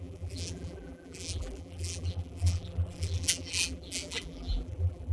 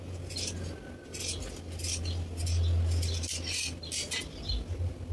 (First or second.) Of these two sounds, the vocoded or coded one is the first